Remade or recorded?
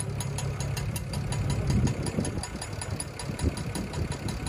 recorded